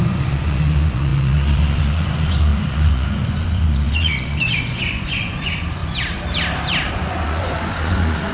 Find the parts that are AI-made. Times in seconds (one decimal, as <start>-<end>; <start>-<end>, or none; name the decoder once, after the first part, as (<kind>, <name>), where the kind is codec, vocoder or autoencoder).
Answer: 0.0-5.8 (vocoder, Vocos); 6.9-8.3